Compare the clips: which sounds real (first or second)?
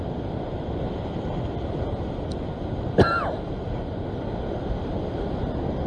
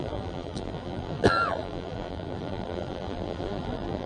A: first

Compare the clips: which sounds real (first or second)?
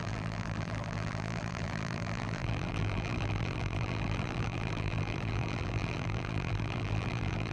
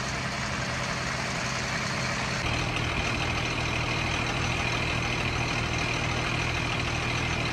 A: second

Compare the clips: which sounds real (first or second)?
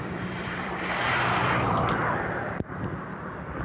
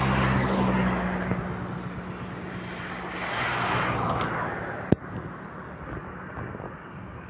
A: second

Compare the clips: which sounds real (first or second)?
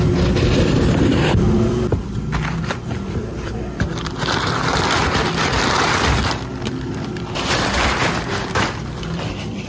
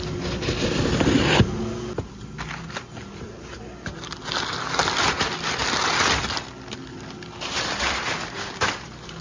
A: second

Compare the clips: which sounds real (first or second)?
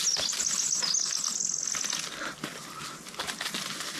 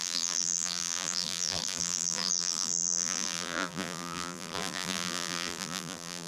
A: first